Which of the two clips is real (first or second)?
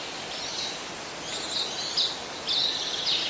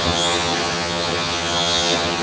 first